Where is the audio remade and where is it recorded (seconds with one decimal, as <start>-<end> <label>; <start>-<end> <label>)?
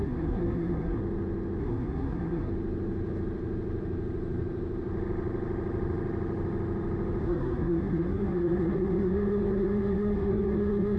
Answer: 0.0-1.0 remade; 1.0-1.6 recorded; 1.6-2.5 remade; 2.5-7.2 recorded; 7.2-11.0 remade